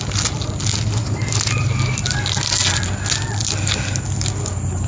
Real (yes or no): yes